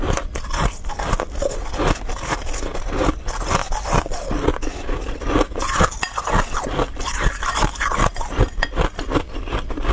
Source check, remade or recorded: recorded